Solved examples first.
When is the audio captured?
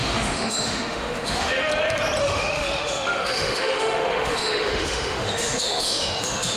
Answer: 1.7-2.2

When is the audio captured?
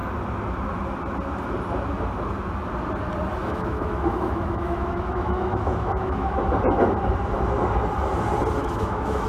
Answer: 0.0-3.4; 6.4-8.6